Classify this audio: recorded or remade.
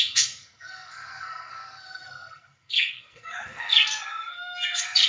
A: remade